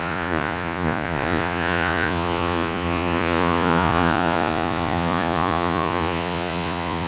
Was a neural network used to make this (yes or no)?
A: yes